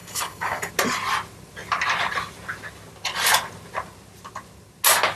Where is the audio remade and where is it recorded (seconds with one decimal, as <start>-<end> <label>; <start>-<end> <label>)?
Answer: 0.0-0.7 remade; 0.7-5.2 recorded